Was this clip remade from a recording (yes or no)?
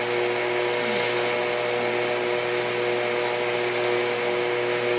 no